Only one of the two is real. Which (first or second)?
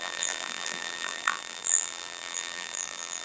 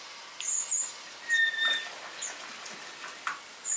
second